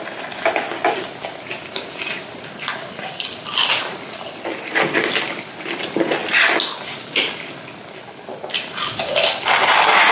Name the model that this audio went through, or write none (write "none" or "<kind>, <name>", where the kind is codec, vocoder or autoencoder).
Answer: none